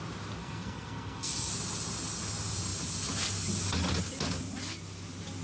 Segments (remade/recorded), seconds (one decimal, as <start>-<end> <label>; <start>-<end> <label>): 0.0-0.4 recorded; 0.4-1.5 remade; 1.5-5.4 recorded